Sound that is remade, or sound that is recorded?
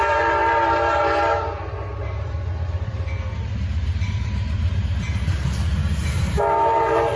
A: remade